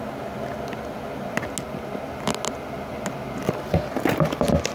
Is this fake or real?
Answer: real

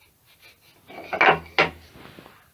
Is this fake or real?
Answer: real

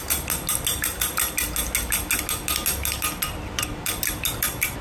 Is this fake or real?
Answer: real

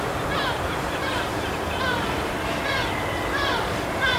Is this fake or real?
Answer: fake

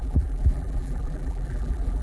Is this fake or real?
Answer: fake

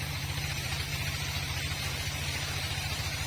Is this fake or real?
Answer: fake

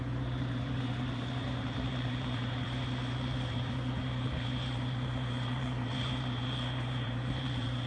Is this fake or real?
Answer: fake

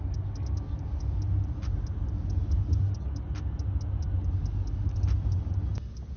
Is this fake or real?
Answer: real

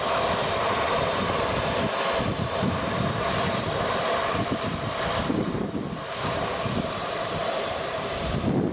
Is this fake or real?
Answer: fake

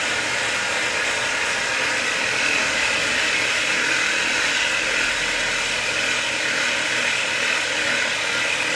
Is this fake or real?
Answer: real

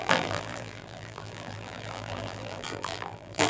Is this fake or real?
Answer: fake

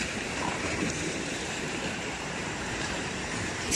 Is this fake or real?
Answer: fake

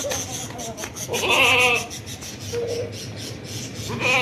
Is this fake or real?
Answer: real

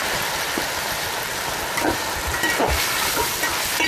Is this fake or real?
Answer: real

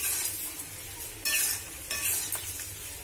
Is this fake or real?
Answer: real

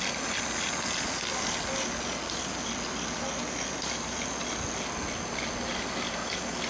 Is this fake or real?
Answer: real